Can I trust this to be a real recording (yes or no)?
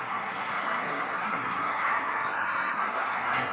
no